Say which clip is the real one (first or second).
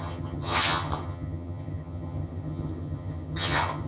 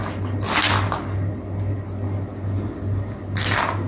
second